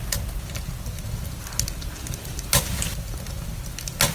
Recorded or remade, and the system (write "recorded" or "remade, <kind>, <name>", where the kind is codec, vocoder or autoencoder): recorded